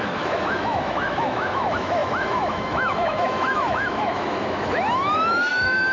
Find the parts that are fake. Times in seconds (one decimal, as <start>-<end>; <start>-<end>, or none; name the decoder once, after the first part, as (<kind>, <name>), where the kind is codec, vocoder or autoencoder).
0.0-5.9 (autoencoder, DAC-VAE)